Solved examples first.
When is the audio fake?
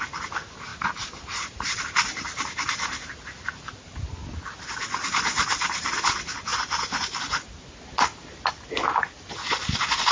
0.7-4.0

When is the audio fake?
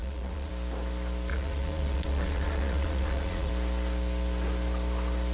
0.0-0.5; 1.3-3.5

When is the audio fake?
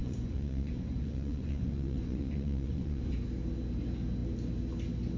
0.0-3.1